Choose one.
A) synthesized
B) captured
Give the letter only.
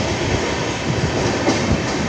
B